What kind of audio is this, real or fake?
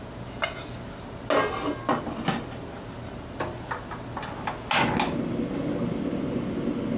real